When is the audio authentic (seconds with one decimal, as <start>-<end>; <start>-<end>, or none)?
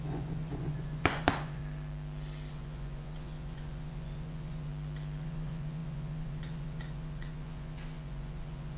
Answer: 1.6-2.5; 4.7-5.2